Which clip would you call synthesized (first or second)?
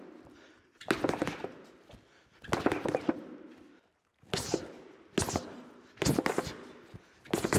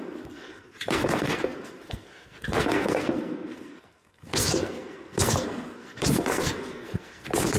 second